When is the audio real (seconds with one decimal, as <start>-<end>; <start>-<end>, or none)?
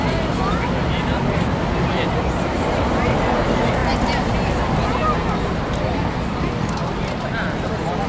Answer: 0.0-8.1